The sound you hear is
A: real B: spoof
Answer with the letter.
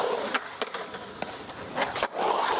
A